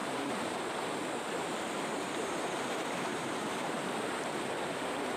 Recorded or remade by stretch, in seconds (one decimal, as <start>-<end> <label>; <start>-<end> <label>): 0.0-0.6 remade; 0.6-3.1 recorded; 3.1-4.0 remade; 4.0-5.2 recorded